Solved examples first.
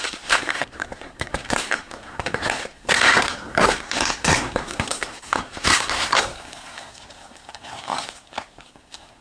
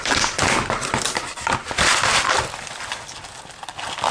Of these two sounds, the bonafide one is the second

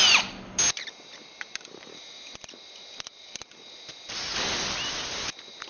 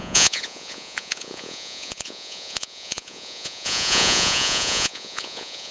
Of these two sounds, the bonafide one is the first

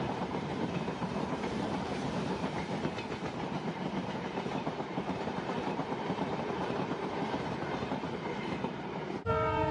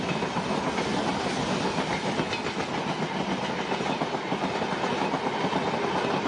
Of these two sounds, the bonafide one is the second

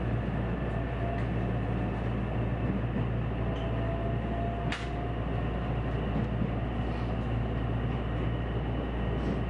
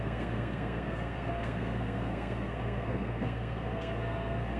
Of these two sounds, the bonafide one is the first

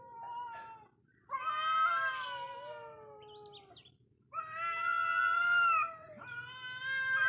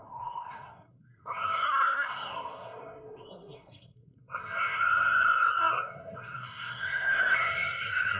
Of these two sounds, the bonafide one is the first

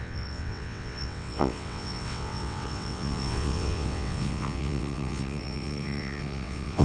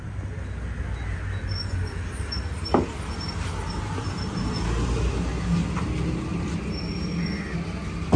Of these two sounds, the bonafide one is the second